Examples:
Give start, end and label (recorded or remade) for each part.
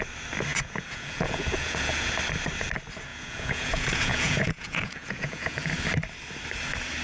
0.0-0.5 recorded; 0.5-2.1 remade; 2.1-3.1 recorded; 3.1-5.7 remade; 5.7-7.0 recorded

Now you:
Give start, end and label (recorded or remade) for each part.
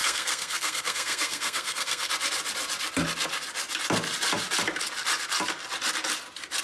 0.0-2.1 remade; 2.1-6.6 recorded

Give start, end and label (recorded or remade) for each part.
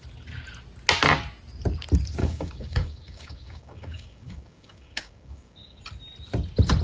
0.0-2.2 recorded; 2.2-5.8 remade; 5.8-6.8 recorded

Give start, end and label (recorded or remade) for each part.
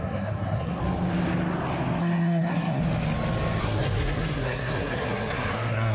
0.0-0.8 remade; 0.8-2.0 recorded; 2.0-2.8 remade; 2.8-3.6 recorded; 3.6-5.9 remade